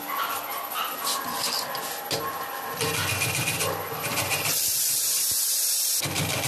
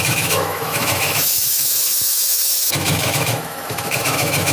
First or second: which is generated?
second